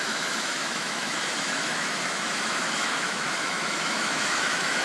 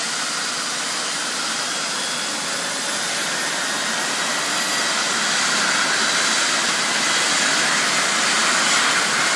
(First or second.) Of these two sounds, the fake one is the first